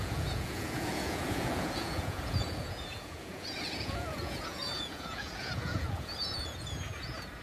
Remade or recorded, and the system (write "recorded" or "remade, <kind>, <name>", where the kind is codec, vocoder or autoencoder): remade, vocoder, Vocos